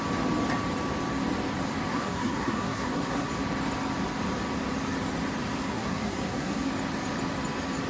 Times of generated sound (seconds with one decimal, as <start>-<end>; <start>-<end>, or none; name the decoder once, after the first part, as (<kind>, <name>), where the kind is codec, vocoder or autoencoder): 1.9-3.3 (codec, SNAC); 5.7-6.7